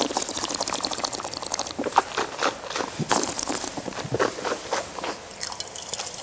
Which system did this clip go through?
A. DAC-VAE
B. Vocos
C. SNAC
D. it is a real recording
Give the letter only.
D